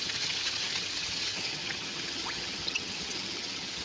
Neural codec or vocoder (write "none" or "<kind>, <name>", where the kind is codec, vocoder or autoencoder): vocoder, HiFi-GAN